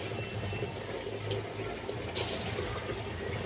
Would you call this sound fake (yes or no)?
no